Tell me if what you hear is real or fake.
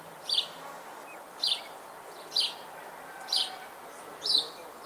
real